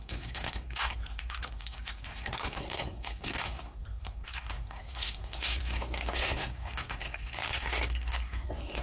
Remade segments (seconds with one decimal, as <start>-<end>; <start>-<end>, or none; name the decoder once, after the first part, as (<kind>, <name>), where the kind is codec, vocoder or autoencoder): 0.0-8.8 (codec, SNAC)